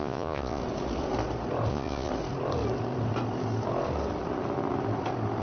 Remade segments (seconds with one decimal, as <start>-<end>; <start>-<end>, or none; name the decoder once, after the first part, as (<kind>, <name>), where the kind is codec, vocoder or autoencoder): 0.0-0.6 (vocoder, Vocos); 1.7-2.1